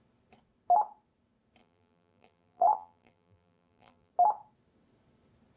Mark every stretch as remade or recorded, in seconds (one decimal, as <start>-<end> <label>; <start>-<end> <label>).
0.0-1.6 recorded; 1.6-4.1 remade; 4.1-5.6 recorded